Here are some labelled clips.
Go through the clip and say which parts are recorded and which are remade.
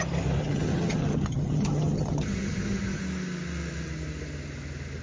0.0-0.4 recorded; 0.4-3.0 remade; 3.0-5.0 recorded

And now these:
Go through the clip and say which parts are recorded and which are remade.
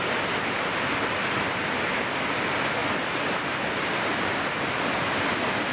0.0-5.7 recorded